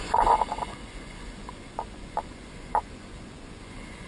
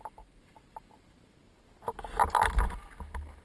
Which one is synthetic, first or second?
first